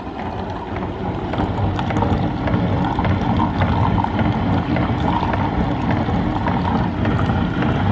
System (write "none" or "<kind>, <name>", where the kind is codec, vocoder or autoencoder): none